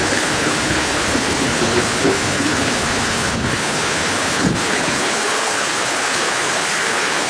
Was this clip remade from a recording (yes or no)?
yes